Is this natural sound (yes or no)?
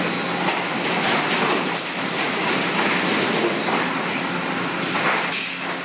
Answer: yes